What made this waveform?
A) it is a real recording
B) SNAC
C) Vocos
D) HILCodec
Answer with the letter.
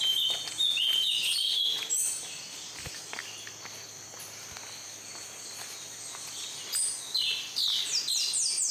A